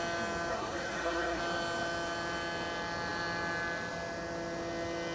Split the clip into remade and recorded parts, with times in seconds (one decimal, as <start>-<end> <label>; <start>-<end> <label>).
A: 0.0-0.5 recorded; 0.5-1.4 remade; 1.4-5.1 recorded